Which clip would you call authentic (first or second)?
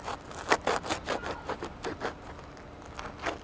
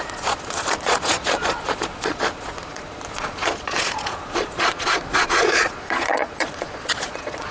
first